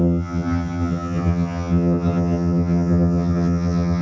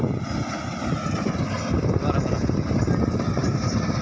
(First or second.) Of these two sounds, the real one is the second